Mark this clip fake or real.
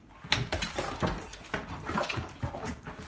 real